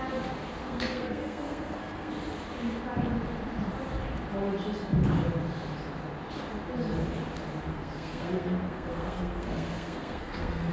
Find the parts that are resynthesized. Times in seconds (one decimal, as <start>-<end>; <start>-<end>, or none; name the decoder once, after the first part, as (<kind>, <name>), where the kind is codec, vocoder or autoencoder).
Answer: 0.6-2.1 (codec, SNAC); 7.7-10.7